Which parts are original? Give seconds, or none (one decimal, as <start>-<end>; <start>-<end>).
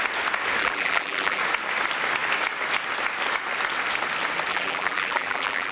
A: 0.0-0.6; 1.4-4.5